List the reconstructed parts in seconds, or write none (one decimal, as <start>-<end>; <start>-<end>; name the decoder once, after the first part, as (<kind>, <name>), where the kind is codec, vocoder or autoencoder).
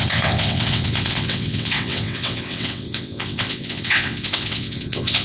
0.0-5.2 (vocoder, WaveNeXt)